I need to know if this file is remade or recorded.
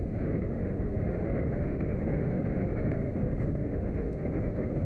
remade